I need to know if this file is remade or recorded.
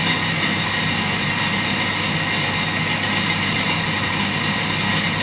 recorded